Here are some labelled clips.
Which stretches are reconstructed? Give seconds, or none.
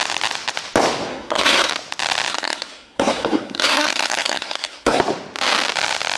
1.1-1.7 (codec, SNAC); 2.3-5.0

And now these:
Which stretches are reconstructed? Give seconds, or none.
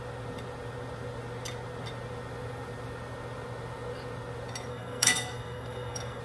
4.7-6.2 (codec, SNAC)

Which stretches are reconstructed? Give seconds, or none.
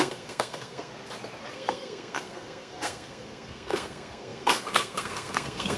0.0-0.9 (codec, SNAC); 1.5-5.8